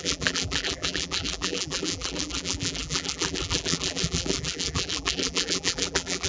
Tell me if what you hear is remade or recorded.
remade